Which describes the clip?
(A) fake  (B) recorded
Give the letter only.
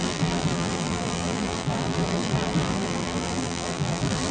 A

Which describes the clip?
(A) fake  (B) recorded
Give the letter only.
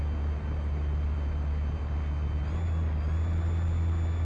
B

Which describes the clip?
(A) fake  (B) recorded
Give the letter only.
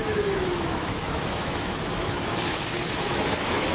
A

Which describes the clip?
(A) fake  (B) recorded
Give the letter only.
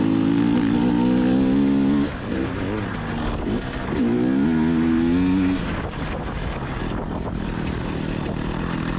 B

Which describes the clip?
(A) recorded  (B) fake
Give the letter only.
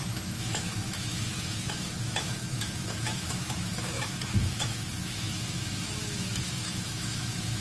B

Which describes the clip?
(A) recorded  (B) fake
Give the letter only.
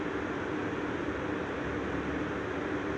A